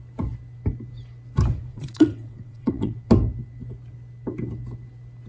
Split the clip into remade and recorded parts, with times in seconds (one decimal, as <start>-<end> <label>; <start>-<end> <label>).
0.0-1.7 recorded; 1.7-3.1 remade; 3.1-5.3 recorded